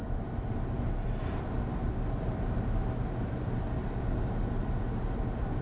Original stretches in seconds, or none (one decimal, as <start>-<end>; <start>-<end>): 0.0-5.6